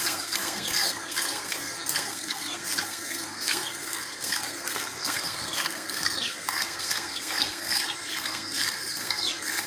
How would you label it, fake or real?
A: fake